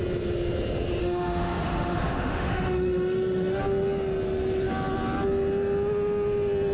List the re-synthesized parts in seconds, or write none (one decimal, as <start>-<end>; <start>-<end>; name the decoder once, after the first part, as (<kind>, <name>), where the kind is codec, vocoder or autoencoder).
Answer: 1.0-3.6 (autoencoder, DAC-VAE)